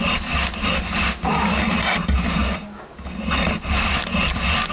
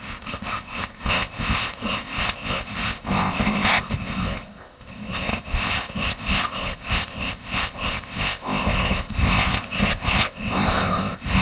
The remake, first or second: second